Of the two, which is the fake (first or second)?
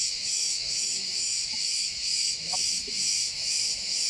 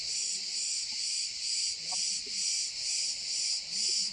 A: first